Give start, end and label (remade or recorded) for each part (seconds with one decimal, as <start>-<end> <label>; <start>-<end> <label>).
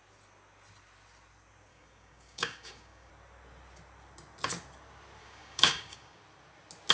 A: 0.0-1.7 recorded; 1.7-3.1 remade; 3.1-5.2 recorded; 5.2-6.2 remade; 6.2-6.9 recorded